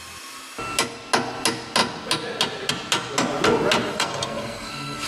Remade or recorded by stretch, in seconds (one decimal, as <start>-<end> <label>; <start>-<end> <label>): 0.0-3.9 recorded; 3.9-5.1 remade